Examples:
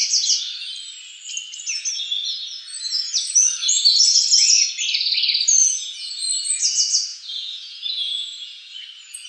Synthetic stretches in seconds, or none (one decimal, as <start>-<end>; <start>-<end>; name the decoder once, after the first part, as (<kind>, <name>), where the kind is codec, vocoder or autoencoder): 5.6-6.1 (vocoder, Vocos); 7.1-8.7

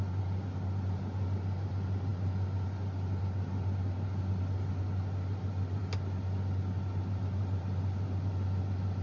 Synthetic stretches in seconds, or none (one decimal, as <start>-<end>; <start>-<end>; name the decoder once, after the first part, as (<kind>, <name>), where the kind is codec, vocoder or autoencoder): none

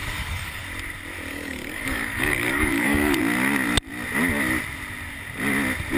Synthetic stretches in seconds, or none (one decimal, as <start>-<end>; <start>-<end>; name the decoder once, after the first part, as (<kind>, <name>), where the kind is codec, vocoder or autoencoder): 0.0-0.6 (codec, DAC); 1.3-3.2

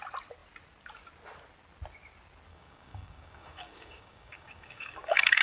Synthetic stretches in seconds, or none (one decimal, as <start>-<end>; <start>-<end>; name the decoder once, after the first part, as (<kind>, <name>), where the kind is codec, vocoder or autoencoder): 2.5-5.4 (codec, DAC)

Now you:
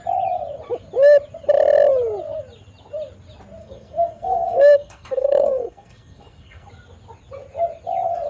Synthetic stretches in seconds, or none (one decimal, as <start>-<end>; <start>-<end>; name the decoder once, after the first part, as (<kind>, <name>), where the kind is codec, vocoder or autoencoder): 3.6-6.7 (codec, SNAC)

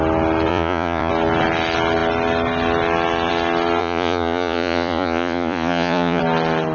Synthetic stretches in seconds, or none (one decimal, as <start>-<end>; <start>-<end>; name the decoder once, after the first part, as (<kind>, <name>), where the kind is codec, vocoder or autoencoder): 0.5-1.1 (vocoder, Vocos); 3.8-6.2

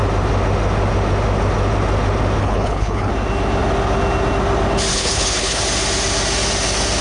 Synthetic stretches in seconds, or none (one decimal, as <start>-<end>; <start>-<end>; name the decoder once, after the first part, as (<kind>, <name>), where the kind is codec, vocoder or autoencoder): 2.4-3.1 (codec, HILCodec); 4.9-5.6